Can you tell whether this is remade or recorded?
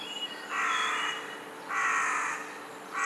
recorded